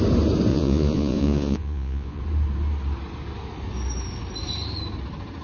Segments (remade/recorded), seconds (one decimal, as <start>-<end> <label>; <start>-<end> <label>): 0.0-0.5 recorded; 0.5-2.2 remade; 2.2-5.4 recorded

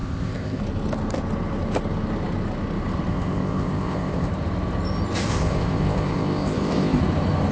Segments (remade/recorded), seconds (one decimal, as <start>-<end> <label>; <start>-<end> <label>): 0.0-0.6 remade; 0.6-3.1 recorded; 3.1-4.3 remade; 4.3-5.3 recorded; 5.3-7.0 remade; 7.0-7.5 recorded

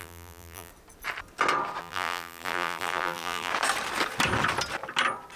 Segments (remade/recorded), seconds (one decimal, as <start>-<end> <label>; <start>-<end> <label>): 0.0-0.7 remade; 0.7-1.8 recorded; 1.8-3.5 remade; 3.5-5.4 recorded

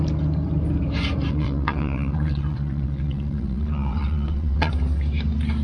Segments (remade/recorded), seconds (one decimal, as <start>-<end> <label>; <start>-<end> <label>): 0.0-1.3 recorded; 1.3-4.7 remade; 4.7-5.6 recorded

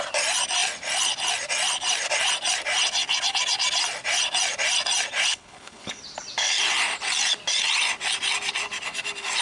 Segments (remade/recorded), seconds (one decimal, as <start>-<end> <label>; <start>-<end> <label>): 0.0-5.3 recorded; 5.3-6.0 remade; 6.0-9.4 recorded

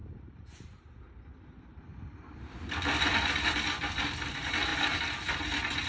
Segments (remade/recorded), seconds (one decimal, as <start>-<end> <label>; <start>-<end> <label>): 0.0-0.9 remade; 0.9-5.9 recorded

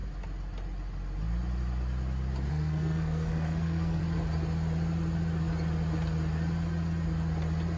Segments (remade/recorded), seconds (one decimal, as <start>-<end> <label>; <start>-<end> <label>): 0.0-2.5 recorded; 2.5-4.0 remade; 4.0-7.8 recorded

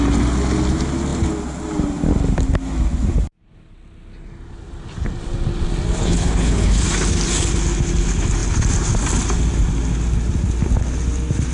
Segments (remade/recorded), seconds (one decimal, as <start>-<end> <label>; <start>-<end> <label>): 0.0-6.0 recorded; 6.0-6.8 remade; 6.8-11.5 recorded